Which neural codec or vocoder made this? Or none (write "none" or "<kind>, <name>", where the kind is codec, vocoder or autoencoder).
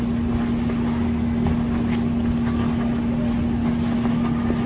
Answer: none